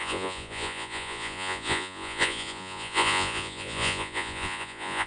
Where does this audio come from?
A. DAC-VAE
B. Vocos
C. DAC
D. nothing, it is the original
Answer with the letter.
B